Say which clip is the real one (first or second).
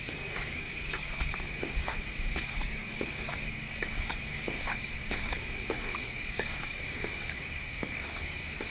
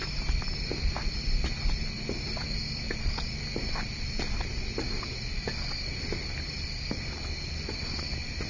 second